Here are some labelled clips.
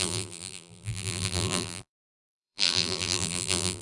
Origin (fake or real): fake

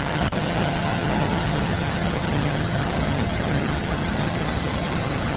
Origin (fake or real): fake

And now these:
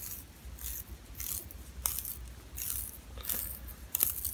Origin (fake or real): real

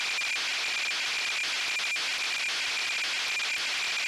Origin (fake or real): real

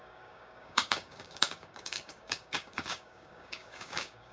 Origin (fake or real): fake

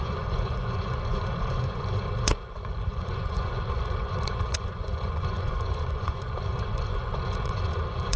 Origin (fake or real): fake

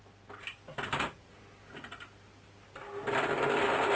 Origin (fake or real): real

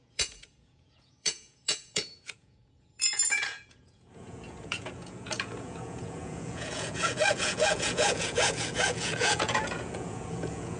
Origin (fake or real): fake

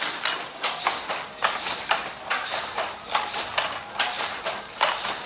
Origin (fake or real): real